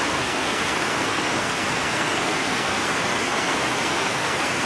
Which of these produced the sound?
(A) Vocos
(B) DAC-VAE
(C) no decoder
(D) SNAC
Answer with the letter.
D